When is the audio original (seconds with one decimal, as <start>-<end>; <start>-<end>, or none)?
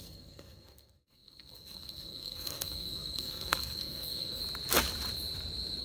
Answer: 4.4-5.8